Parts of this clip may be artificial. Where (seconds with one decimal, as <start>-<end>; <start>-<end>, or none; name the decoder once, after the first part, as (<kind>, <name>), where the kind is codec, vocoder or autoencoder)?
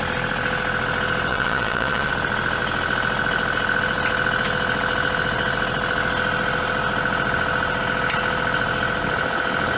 1.3-2.1 (vocoder, Vocos)